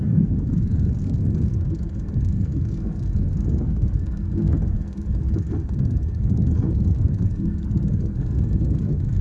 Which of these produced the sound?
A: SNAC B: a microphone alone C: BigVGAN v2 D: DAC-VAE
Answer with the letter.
A